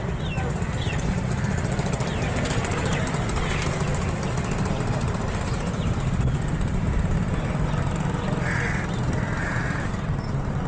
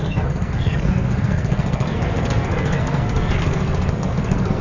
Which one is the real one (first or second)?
first